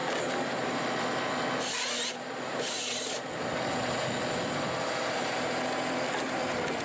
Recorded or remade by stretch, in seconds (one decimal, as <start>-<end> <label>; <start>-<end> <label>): 0.0-6.8 recorded